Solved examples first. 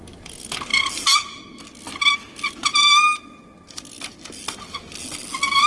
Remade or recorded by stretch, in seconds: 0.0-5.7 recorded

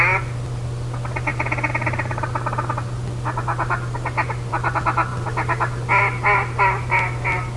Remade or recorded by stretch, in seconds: 0.0-7.6 recorded